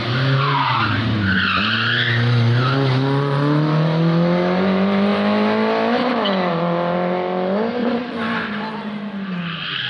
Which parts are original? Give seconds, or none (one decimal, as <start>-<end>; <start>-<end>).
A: 0.0-7.8; 9.4-9.9